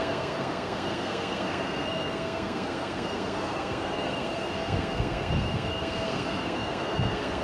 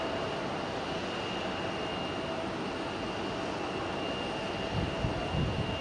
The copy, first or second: first